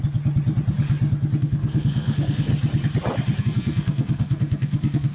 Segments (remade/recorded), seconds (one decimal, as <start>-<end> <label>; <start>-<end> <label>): 0.0-1.4 recorded; 1.4-2.5 remade; 2.5-3.4 recorded; 3.4-5.1 remade